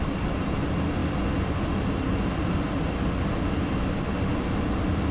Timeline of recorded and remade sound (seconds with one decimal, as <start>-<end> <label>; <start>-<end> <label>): 0.0-5.1 recorded